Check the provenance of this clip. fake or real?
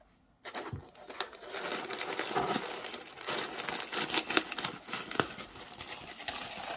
real